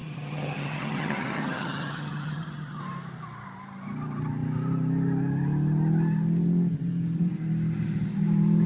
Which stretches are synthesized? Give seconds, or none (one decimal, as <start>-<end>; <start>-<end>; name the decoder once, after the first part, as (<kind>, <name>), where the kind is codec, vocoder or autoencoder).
0.0-2.8 (vocoder, HiFi-GAN)

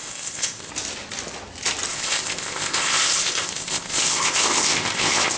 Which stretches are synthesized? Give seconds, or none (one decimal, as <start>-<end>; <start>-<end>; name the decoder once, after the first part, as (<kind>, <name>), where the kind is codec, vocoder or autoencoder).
0.0-0.7 (codec, ZipCodec); 1.9-5.4

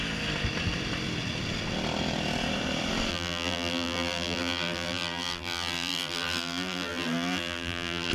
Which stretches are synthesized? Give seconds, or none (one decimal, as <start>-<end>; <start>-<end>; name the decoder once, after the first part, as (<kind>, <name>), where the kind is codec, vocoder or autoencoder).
3.1-8.1 (vocoder, BigVGAN v2)

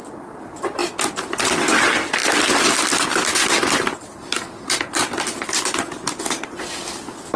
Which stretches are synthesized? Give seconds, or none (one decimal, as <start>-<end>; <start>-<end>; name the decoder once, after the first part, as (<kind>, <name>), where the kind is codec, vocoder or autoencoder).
none

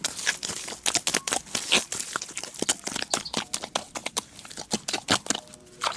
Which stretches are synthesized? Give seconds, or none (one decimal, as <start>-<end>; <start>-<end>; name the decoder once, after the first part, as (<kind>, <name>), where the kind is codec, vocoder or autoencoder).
4.0-4.5 (vocoder, BigVGAN v2)